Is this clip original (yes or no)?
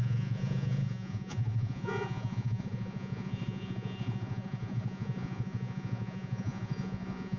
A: no